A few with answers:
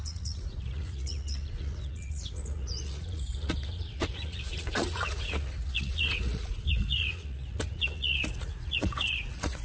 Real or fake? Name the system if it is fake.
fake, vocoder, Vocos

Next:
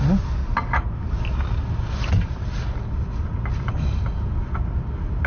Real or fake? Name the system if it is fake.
real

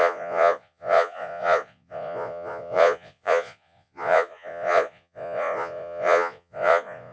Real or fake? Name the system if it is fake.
fake, vocoder, Vocos